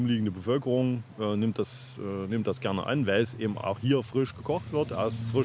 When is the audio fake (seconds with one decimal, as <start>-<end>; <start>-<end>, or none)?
3.6-4.4